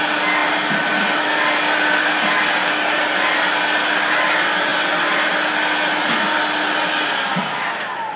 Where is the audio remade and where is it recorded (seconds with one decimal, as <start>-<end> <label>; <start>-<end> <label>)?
0.0-8.2 recorded